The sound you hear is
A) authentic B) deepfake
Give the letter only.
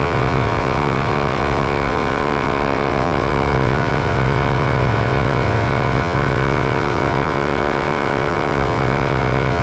B